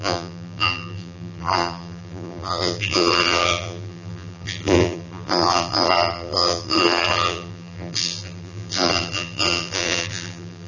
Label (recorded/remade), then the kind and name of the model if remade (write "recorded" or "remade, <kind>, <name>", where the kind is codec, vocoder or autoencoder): remade, vocoder, BigVGAN v2